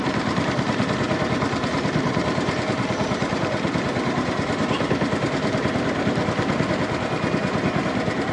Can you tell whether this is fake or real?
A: fake